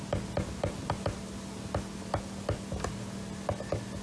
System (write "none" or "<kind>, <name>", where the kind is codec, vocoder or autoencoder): none